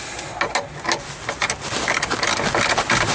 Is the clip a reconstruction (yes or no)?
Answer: no